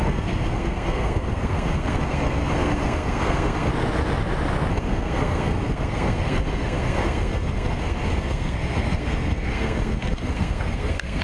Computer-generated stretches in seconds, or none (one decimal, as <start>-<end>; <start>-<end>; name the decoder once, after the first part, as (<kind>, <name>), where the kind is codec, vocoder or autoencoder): 0.0-3.7 (codec, SNAC); 4.7-11.2

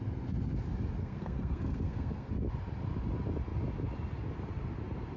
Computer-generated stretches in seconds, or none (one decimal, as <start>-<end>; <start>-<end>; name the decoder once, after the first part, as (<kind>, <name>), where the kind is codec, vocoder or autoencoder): 1.0-2.3 (codec, SNAC)

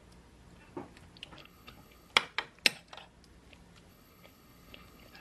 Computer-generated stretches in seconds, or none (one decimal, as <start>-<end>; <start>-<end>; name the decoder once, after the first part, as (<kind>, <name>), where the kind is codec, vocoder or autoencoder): 1.4-2.1 (codec, HILCodec); 3.9-5.2

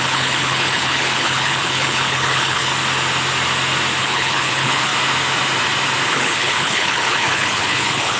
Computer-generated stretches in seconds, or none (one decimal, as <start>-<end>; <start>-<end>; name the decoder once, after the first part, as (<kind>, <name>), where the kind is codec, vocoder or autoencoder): 0.0-2.7 (codec, HILCodec); 4.0-4.9; 6.1-8.2

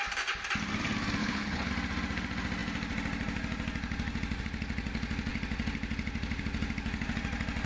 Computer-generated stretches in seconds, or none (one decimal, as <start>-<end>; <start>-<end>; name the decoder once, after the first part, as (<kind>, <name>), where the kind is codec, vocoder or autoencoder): 1.2-1.7 (codec, HILCodec)

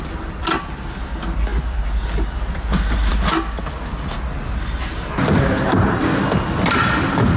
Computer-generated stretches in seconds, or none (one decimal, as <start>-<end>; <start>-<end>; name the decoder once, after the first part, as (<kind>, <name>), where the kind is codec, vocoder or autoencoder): none

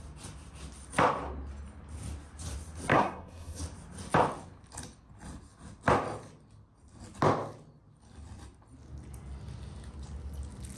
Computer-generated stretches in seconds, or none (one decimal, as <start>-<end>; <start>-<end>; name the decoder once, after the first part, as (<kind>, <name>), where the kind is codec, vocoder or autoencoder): 2.9-3.6 (codec, SNAC)

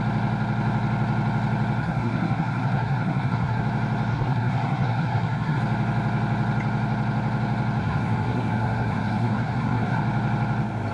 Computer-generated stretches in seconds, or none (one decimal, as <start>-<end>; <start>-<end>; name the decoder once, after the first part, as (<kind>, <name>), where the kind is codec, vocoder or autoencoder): 1.8-3.6 (codec, SNAC); 4.1-5.6; 7.8-10.0